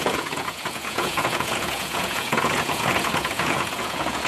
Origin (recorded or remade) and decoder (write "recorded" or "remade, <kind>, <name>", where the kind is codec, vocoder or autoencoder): remade, vocoder, Vocos